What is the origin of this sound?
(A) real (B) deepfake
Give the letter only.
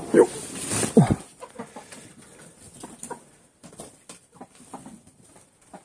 B